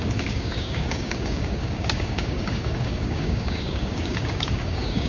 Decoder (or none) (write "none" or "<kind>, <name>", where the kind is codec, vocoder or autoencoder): codec, DAC